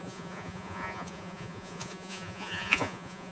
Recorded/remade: remade